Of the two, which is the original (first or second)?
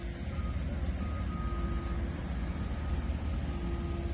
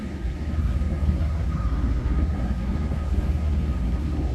first